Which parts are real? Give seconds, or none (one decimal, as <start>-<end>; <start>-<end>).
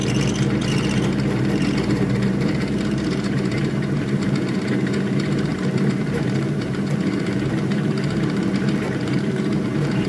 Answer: 0.0-0.7